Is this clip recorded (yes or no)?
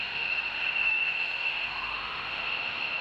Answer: no